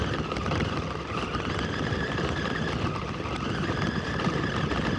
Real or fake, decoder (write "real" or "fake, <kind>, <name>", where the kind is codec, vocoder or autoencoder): real